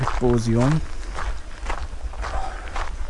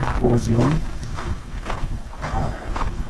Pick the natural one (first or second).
first